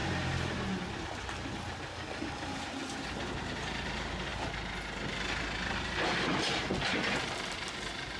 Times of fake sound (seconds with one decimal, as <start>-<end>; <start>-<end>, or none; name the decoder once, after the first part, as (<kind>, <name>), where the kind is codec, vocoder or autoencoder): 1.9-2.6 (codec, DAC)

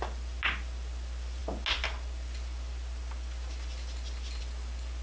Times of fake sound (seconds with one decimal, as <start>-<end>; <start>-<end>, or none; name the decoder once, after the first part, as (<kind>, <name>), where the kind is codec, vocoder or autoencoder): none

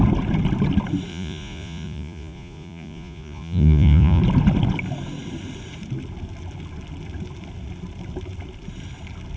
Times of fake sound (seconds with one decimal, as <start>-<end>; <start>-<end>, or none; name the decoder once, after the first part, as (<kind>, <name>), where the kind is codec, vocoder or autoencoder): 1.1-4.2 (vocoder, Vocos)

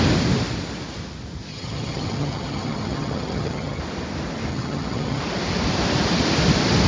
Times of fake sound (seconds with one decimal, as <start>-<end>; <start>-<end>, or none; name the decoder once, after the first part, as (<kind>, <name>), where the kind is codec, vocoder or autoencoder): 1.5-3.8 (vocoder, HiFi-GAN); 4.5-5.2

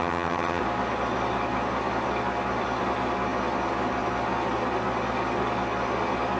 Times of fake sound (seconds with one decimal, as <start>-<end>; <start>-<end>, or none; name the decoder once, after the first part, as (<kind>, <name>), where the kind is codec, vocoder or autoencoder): 0.0-0.6 (vocoder, HiFi-GAN)

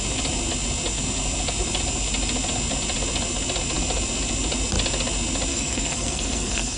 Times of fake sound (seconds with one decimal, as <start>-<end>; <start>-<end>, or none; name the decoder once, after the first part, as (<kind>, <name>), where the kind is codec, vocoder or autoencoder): 5.5-6.8 (codec, SNAC)

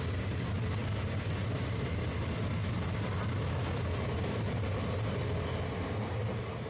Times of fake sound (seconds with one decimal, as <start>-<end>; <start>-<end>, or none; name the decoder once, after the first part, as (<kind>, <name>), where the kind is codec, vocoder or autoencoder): 0.8-2.5 (vocoder, BigVGAN v2)

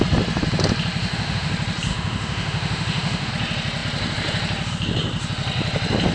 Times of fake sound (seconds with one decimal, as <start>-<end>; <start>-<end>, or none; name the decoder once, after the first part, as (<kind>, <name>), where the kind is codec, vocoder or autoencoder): 1.0-1.5 (autoencoder, DAC-VAE); 1.9-3.3